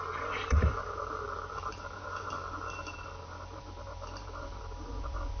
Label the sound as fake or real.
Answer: fake